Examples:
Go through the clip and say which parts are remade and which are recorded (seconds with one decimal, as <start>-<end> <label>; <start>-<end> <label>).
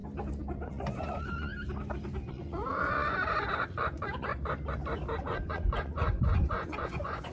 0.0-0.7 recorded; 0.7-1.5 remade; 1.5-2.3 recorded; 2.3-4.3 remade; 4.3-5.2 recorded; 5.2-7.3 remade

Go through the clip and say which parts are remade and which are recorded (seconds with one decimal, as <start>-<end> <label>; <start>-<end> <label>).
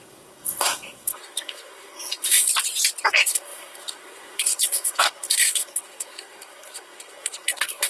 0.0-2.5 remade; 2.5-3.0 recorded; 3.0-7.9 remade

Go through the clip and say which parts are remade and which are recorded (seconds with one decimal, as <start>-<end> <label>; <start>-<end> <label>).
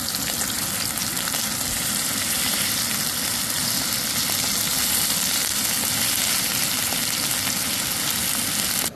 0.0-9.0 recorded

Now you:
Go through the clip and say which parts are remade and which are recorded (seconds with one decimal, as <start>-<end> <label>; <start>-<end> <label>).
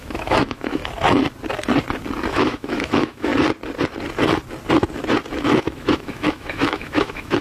0.0-0.8 remade; 0.8-2.3 recorded; 2.3-3.3 remade; 3.3-5.4 recorded; 5.4-7.4 remade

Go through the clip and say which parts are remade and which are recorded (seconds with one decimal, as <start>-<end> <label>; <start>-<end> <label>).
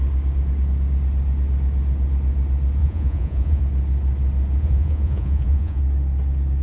0.0-2.8 recorded; 2.8-3.6 remade; 3.6-4.6 recorded; 4.6-5.8 remade; 5.8-6.6 recorded